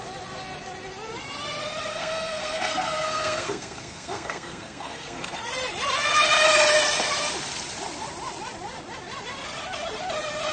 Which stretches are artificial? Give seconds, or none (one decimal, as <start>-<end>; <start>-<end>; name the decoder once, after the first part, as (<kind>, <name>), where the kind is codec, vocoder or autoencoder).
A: 1.9-5.4 (codec, SNAC)